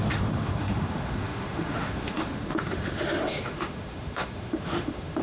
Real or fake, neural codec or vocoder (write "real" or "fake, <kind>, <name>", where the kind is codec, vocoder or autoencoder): fake, autoencoder, DAC-VAE